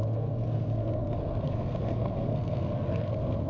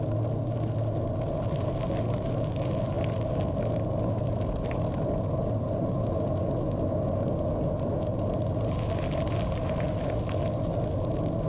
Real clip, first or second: second